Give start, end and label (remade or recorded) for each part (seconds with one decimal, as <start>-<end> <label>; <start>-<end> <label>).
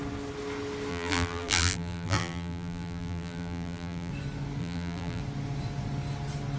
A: 0.0-0.9 recorded; 0.9-4.1 remade; 4.1-4.6 recorded; 4.6-5.2 remade; 5.2-6.6 recorded